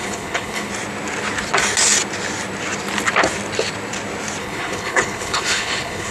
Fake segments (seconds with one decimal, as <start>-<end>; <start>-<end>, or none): 0.0-0.7; 4.4-6.1